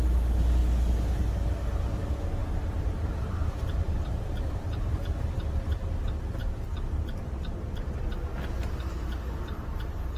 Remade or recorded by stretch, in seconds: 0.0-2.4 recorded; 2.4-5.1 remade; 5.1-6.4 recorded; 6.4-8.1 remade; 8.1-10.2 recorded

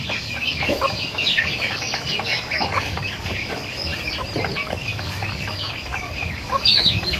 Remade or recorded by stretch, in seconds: 0.0-3.9 remade; 3.9-4.5 recorded; 4.5-7.2 remade

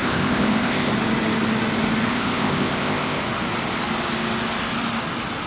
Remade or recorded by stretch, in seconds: 0.0-0.9 remade; 0.9-2.1 recorded; 2.1-3.2 remade; 3.2-5.5 recorded

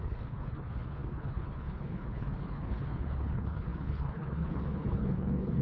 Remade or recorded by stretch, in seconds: 0.0-5.6 remade

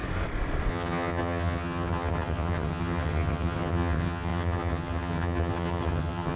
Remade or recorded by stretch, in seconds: 0.0-0.7 recorded; 0.7-6.4 remade

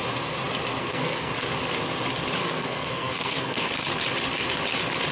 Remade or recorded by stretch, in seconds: 0.0-0.8 recorded; 0.8-1.3 remade; 1.3-2.4 recorded; 2.4-3.8 remade; 3.8-5.1 recorded

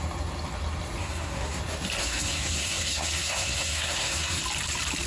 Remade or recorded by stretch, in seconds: 0.0-1.0 recorded; 1.0-1.6 remade; 1.6-2.0 recorded; 2.0-4.4 remade; 4.4-5.1 recorded